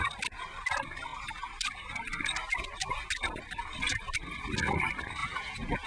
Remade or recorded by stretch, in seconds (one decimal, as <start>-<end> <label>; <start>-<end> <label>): 0.0-5.2 recorded; 5.2-5.9 remade